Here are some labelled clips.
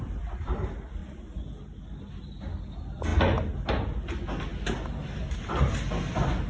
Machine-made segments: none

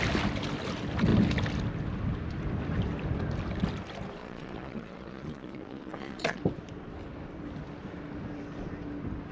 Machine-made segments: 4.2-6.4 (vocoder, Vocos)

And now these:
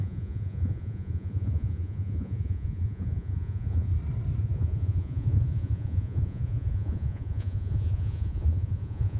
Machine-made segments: 0.0-3.9 (vocoder, Vocos); 4.4-9.2

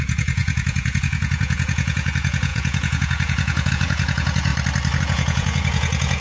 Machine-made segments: 0.0-4.5 (vocoder, Vocos); 5.0-6.2

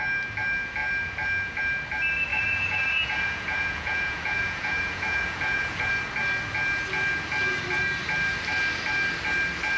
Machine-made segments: 2.3-5.9 (vocoder, Vocos)